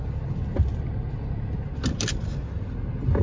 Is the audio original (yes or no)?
yes